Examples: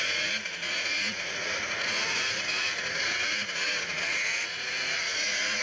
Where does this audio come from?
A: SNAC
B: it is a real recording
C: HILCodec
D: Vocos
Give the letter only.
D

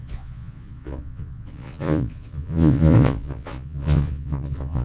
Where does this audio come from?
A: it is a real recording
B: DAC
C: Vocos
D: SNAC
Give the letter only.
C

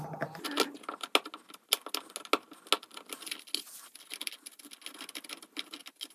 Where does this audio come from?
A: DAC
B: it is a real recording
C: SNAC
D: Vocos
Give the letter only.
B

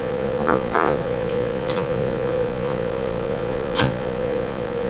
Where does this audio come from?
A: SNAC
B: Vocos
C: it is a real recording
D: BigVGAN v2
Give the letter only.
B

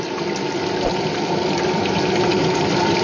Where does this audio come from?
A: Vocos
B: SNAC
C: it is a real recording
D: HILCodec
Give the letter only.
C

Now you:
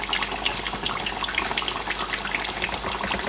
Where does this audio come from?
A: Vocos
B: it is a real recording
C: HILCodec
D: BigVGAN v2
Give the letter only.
B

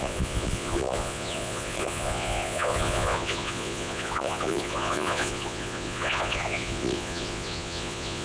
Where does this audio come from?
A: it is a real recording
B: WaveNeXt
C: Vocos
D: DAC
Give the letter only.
C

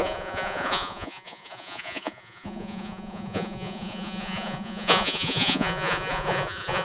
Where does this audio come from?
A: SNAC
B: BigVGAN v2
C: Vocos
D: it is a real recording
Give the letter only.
C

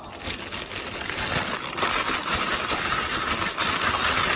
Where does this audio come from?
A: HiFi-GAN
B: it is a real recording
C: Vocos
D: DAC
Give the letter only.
B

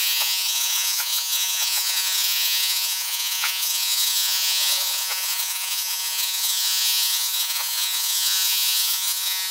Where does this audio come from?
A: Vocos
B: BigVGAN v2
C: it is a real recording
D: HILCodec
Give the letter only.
A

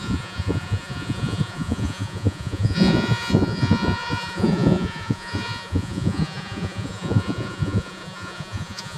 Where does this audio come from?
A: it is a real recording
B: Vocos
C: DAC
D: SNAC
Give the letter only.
B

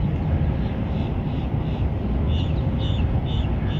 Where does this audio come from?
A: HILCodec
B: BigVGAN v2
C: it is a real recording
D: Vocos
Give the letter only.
C